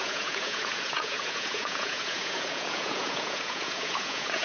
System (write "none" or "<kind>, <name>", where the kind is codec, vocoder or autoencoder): vocoder, Vocos